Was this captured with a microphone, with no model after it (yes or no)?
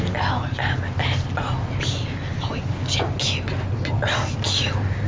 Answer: yes